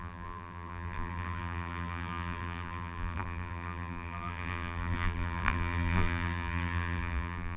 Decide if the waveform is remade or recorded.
remade